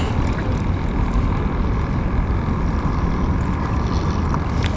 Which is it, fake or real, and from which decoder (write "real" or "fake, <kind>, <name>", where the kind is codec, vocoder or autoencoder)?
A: real